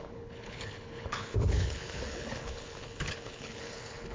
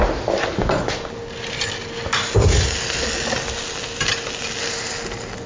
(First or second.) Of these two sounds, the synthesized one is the first